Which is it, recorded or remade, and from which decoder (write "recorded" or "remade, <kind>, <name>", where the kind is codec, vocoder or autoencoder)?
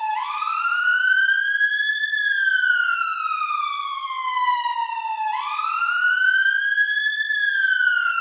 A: recorded